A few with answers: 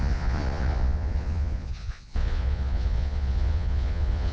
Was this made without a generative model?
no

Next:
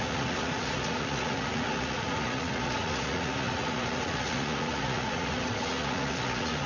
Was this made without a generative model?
no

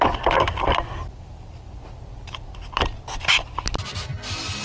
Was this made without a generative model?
yes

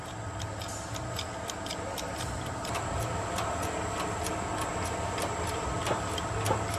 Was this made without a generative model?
yes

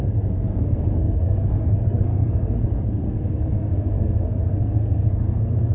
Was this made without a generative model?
no